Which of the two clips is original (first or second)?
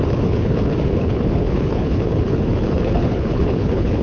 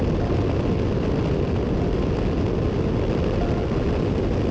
second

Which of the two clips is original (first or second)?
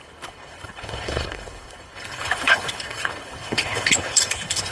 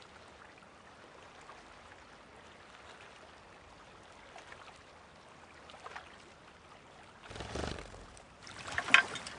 second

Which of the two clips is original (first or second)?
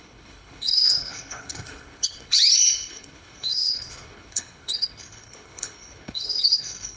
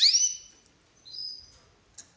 second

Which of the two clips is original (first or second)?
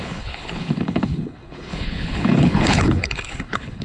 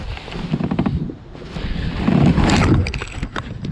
second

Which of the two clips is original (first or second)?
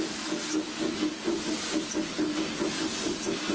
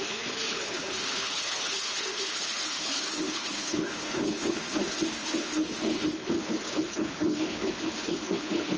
first